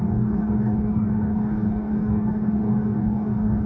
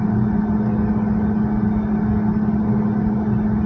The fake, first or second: first